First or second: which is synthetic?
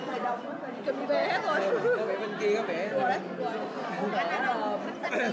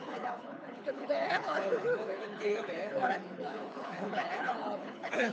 second